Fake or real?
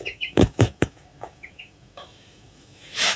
fake